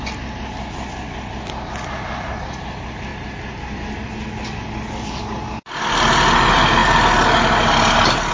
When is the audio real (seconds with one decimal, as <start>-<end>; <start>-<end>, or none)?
0.0-8.3